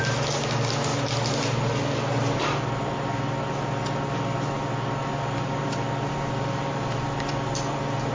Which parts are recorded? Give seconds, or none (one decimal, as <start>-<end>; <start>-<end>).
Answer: 0.0-8.1